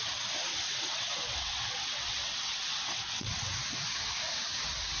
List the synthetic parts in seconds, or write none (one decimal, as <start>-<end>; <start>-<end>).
0.5-3.5

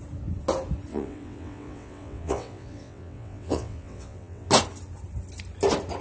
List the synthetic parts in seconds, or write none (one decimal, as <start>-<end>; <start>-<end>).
0.9-4.5

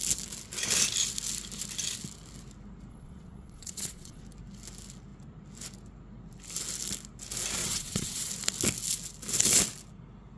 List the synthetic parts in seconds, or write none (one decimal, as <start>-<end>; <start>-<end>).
2.9-4.2; 7.6-8.3